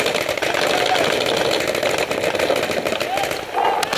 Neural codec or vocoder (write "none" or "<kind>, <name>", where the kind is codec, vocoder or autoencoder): none